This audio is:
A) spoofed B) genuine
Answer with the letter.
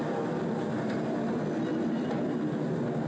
B